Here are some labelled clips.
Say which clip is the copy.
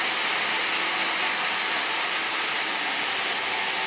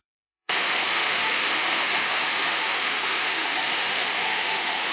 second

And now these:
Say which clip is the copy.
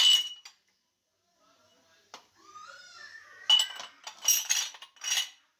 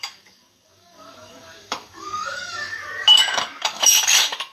second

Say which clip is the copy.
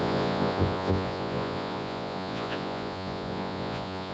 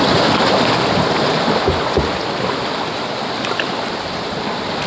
first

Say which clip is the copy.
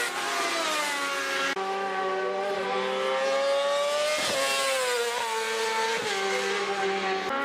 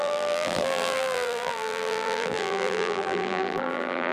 second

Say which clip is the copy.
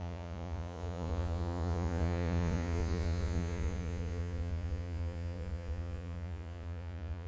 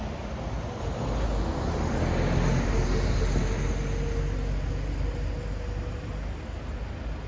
first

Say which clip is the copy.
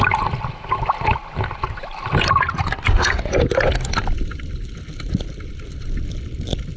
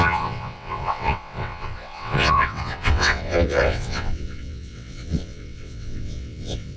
second